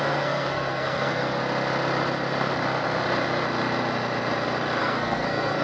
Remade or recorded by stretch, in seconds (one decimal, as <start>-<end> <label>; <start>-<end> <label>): 0.0-1.4 remade; 1.4-4.8 recorded; 4.8-5.6 remade